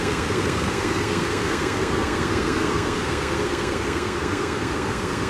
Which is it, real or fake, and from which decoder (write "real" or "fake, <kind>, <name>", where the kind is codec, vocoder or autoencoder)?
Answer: fake, codec, SNAC